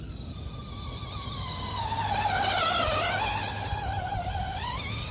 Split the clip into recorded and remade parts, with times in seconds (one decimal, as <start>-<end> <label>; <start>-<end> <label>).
0.0-5.1 recorded

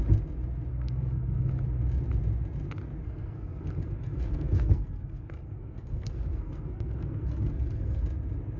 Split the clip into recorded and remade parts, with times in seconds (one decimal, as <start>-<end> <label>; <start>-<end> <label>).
0.0-0.7 recorded; 0.7-1.5 remade; 1.5-3.0 recorded; 3.0-8.0 remade; 8.0-8.6 recorded

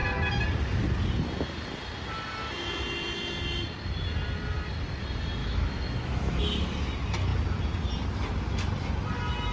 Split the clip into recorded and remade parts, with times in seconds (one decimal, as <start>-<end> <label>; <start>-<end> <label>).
0.0-5.4 recorded; 5.4-6.4 remade; 6.4-9.5 recorded

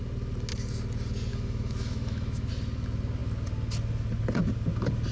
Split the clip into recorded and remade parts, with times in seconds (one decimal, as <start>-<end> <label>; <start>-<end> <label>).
0.0-1.3 recorded; 1.3-2.5 remade; 2.5-5.1 recorded

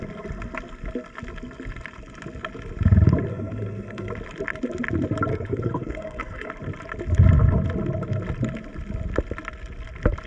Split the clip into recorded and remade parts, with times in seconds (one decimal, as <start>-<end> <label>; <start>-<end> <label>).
0.0-3.3 recorded; 3.3-4.1 remade; 4.1-5.3 recorded; 5.3-6.5 remade; 6.5-10.3 recorded